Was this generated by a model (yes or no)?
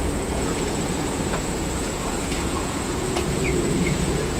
yes